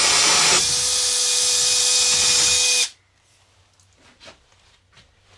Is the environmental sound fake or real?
real